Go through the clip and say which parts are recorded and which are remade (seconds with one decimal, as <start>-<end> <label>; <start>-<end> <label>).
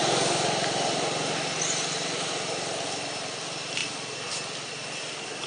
0.0-5.5 recorded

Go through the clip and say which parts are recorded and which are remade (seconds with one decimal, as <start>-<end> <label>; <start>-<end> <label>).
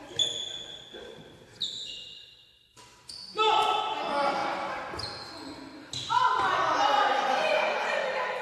0.0-8.4 recorded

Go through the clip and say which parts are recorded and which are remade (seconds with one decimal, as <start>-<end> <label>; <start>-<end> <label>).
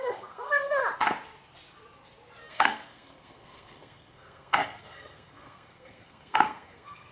0.0-0.8 remade; 0.8-2.5 recorded; 2.5-7.1 remade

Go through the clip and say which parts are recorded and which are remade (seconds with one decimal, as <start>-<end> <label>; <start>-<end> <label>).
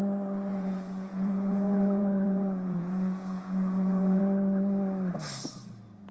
0.0-0.5 recorded; 0.5-4.2 remade; 4.2-6.1 recorded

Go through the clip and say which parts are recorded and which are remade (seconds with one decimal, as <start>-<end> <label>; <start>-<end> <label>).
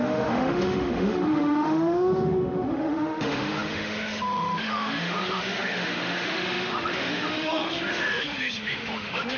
0.0-9.4 remade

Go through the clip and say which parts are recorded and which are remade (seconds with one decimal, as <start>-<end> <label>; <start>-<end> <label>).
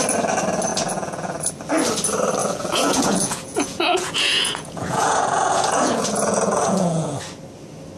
0.0-0.7 recorded; 0.7-1.5 remade; 1.5-2.4 recorded; 2.4-7.2 remade; 7.2-8.0 recorded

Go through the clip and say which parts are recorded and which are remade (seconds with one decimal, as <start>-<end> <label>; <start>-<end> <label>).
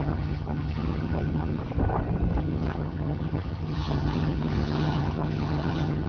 0.0-1.6 remade; 1.6-2.4 recorded; 2.4-6.1 remade